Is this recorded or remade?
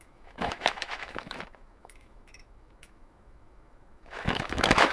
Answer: remade